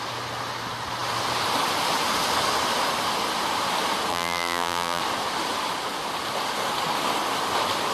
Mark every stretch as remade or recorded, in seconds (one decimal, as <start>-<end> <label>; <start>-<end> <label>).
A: 0.0-4.1 recorded; 4.1-5.0 remade; 5.0-7.9 recorded